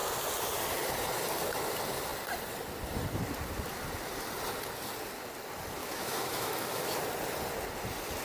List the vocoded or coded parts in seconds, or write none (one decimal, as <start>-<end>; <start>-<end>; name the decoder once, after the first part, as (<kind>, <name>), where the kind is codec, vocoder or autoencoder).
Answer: 5.8-7.0 (autoencoder, DAC-VAE)